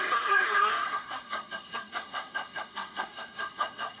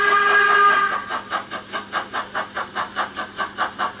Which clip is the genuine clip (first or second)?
second